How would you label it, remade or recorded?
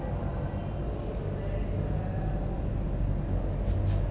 recorded